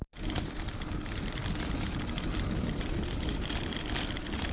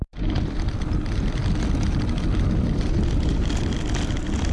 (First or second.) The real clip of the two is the second